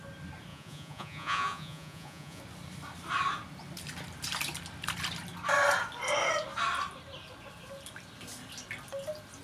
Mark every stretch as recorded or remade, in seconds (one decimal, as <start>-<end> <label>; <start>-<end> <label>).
0.0-0.5 recorded; 0.5-2.4 remade; 2.4-9.4 recorded